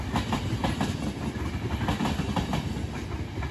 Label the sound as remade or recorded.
recorded